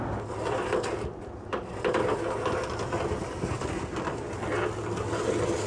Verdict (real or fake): real